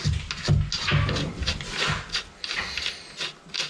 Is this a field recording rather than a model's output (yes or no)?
yes